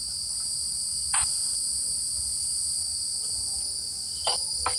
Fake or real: real